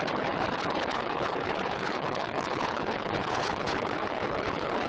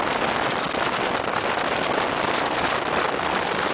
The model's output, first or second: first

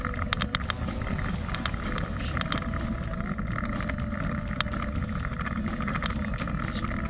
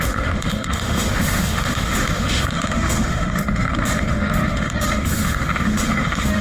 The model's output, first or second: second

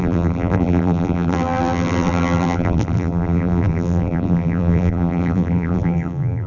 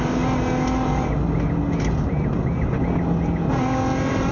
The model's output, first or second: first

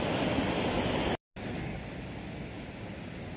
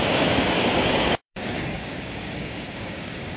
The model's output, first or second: second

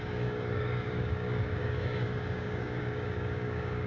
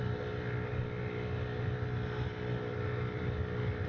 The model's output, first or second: first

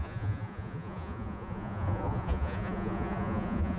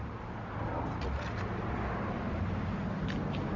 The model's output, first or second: first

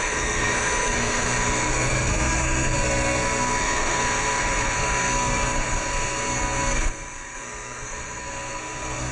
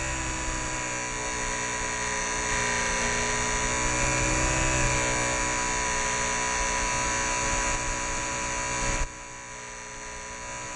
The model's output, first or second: first